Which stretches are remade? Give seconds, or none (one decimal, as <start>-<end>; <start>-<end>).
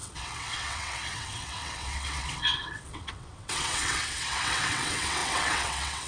0.0-6.1